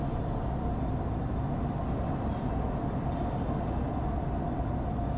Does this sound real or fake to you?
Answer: real